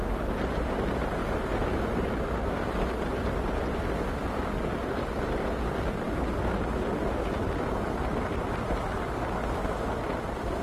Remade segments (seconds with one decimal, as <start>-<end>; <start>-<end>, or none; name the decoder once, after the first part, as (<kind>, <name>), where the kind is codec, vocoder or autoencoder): 1.2-2.1 (vocoder, BigVGAN v2)